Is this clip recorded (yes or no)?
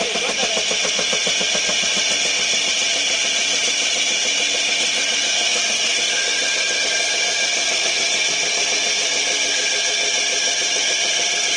yes